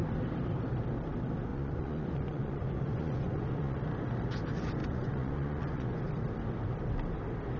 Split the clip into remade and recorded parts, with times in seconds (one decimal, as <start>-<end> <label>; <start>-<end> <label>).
0.0-1.5 recorded; 1.5-3.8 remade; 3.8-4.8 recorded; 4.8-6.0 remade; 6.0-7.6 recorded